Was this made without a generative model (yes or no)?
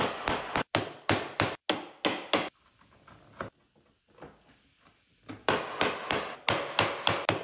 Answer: yes